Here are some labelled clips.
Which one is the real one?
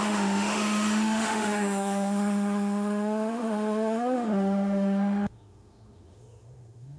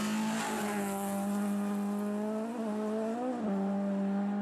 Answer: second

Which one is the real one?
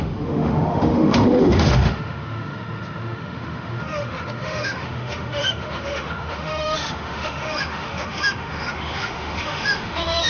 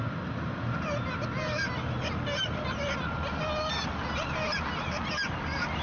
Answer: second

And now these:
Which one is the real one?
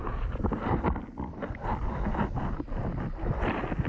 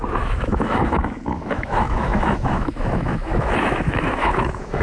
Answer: first